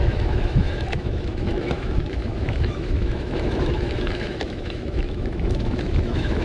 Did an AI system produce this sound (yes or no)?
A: yes